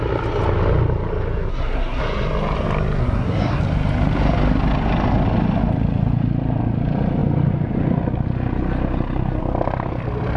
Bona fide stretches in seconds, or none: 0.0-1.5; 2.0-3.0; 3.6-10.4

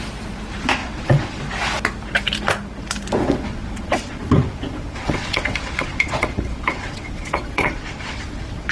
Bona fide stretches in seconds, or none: 0.0-0.8; 1.4-3.2

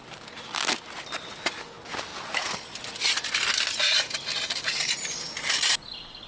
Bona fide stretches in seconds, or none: 0.0-6.3

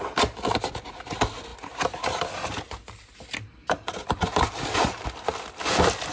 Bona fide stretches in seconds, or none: 0.0-6.1

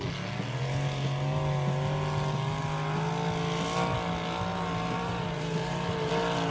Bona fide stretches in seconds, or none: 0.0-4.5; 6.1-6.5

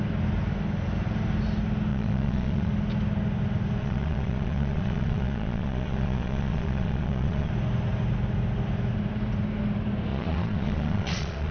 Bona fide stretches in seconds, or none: 0.0-1.9; 2.7-3.8; 7.5-10.1

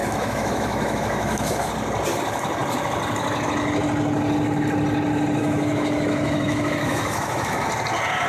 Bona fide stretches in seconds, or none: 1.7-5.4; 7.7-8.3